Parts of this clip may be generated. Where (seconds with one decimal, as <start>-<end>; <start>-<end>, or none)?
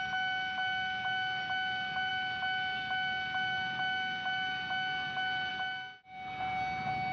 none